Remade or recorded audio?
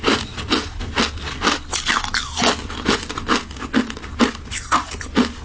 recorded